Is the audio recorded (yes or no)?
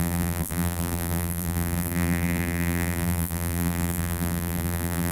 no